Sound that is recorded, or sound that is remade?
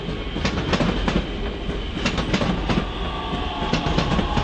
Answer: recorded